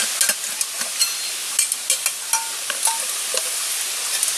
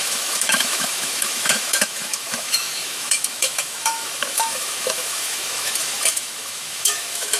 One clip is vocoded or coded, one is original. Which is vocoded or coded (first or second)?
second